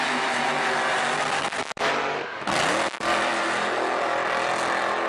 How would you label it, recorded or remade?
recorded